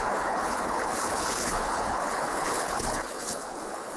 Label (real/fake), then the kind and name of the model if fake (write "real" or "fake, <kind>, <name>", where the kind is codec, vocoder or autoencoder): fake, codec, HILCodec